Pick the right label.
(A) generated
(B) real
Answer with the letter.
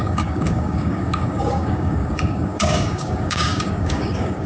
A